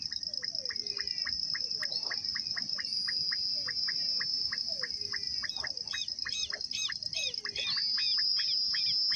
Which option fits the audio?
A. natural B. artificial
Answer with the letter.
A